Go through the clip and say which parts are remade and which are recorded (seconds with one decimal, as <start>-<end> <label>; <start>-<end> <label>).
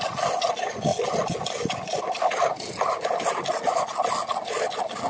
0.0-5.1 recorded